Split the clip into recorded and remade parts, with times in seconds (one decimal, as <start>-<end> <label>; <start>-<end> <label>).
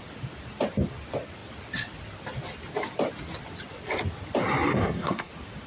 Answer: 0.0-4.8 recorded; 4.8-5.3 remade; 5.3-5.7 recorded